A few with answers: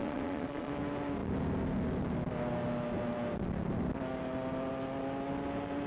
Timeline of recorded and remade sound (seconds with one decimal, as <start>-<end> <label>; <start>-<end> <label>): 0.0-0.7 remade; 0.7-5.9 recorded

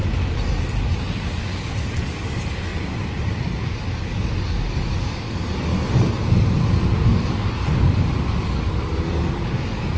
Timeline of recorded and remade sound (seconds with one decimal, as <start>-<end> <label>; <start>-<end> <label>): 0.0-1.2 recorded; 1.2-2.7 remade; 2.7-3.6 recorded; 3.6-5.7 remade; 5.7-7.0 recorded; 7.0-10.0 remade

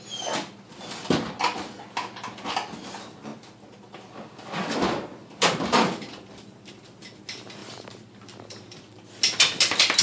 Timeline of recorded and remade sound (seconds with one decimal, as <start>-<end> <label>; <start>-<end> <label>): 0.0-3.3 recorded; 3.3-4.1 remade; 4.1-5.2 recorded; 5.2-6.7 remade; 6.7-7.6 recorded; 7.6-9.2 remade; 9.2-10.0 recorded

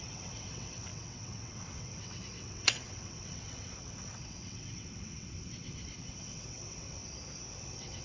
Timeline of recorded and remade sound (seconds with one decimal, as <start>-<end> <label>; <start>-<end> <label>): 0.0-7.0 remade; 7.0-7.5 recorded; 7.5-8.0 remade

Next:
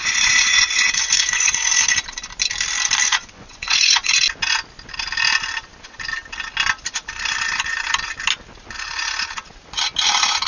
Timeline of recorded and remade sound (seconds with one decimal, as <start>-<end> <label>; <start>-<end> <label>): 0.0-1.8 remade; 1.8-3.1 recorded; 3.1-4.1 remade; 4.1-10.5 recorded